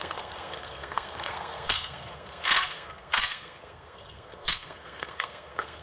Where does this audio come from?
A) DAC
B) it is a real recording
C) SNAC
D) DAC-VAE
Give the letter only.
C